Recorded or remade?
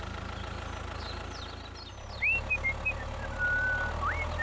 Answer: recorded